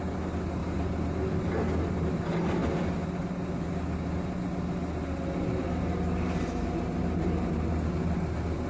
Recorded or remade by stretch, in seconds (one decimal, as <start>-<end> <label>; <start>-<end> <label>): 0.0-8.7 recorded